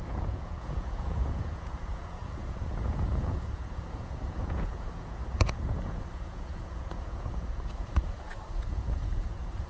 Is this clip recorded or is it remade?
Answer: remade